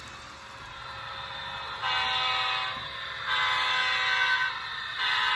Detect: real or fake real